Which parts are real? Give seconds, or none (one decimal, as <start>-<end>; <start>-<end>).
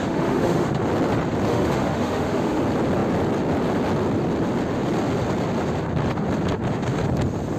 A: 0.8-1.5; 2.6-7.6